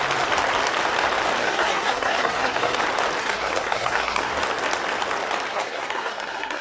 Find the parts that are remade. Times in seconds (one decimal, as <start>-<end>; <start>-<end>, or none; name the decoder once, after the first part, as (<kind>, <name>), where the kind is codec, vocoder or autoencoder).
1.4-2.8 (codec, SNAC); 3.2-4.3; 5.5-6.6